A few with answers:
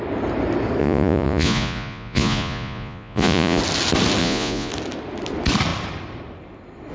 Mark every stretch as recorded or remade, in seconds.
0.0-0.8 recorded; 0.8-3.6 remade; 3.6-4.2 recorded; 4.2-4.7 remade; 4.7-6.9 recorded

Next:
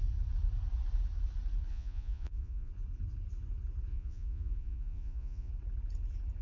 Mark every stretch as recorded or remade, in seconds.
0.0-1.7 recorded; 1.7-2.7 remade; 2.7-3.9 recorded; 3.9-5.5 remade; 5.5-6.4 recorded

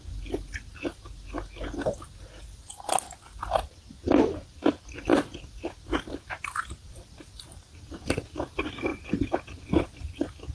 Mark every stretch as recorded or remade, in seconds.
0.0-10.5 recorded

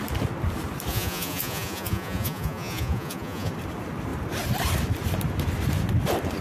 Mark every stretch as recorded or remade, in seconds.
0.0-0.9 recorded; 0.9-3.5 remade; 3.5-6.4 recorded